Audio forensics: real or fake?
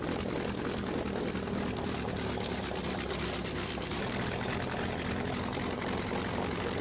real